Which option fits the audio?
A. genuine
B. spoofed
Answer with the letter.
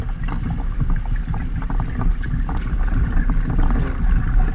A